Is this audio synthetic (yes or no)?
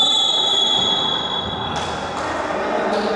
no